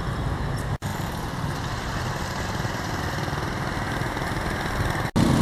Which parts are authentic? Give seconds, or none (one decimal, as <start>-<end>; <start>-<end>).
0.0-0.9; 4.1-5.4